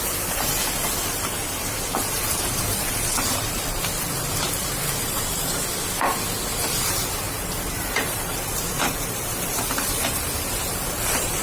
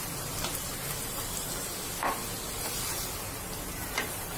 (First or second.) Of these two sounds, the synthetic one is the first